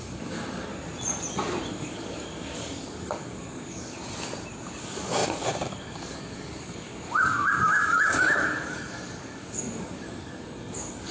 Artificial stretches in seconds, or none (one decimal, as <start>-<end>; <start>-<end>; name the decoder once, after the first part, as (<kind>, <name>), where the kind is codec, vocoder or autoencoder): 0.0-0.7 (codec, DAC); 1.7-4.0; 4.8-11.1